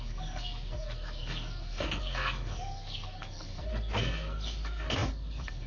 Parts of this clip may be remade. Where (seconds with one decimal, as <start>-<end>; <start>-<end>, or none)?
0.0-5.7